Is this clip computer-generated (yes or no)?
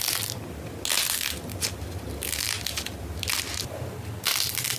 no